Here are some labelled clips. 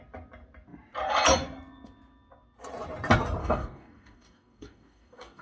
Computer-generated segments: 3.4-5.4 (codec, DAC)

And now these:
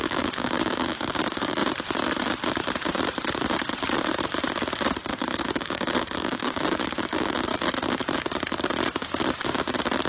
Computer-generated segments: 0.0-1.6 (codec, DAC); 5.1-7.5

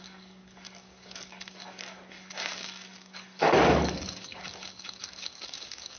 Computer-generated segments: 0.0-6.0 (codec, DAC)

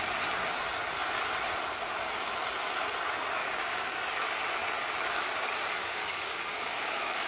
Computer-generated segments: 3.4-4.0 (codec, DAC); 5.8-7.3

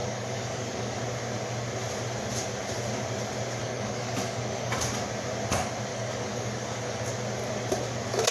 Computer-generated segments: 0.0-1.0 (codec, DAC); 3.6-4.8; 5.9-7.0

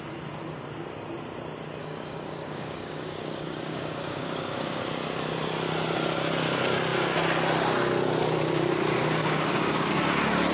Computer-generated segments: 1.8-4.8 (codec, DAC); 9.2-9.9